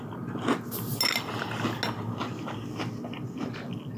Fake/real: real